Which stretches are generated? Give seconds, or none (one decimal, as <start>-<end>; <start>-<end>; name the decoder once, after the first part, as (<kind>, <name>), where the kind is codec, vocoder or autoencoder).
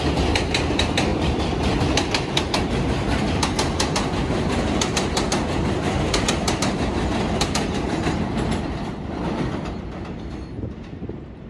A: 0.0-11.5 (vocoder, BigVGAN v2)